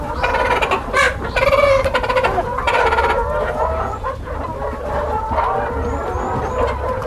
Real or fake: real